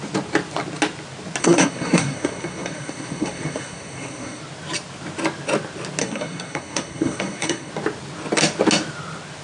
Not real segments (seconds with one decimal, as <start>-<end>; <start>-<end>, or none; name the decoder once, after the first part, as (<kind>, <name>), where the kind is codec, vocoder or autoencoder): 1.4-4.4 (codec, SNAC); 6.0-7.7

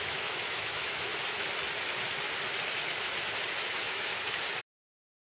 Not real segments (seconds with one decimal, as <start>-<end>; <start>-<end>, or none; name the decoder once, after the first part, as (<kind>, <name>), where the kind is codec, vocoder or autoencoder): 0.0-1.1 (autoencoder, DAC-VAE); 3.6-4.1; 4.6-5.3

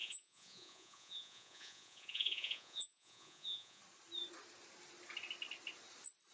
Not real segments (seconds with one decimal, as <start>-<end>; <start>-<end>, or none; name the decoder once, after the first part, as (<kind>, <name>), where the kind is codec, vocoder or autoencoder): 0.0-3.8 (vocoder, Vocos)

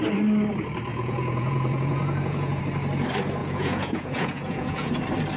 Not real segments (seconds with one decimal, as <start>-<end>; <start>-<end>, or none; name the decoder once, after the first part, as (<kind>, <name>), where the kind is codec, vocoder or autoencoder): 0.9-2.6 (vocoder, Vocos); 3.4-4.9

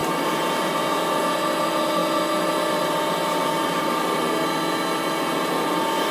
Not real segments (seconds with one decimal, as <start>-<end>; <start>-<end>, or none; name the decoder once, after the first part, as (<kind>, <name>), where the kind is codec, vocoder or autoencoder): none

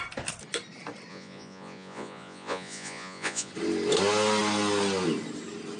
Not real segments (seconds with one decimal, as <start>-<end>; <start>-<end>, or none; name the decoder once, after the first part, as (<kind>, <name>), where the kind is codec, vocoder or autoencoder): 1.1-3.5 (vocoder, Vocos)

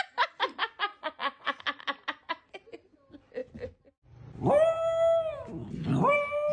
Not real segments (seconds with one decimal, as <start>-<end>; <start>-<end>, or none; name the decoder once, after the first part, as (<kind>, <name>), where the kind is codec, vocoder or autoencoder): 0.9-1.6 (vocoder, WaveNeXt)

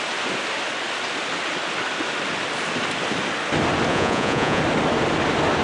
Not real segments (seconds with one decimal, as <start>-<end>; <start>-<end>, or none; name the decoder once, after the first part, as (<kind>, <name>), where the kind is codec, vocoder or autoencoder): 3.9-4.6 (vocoder, Vocos)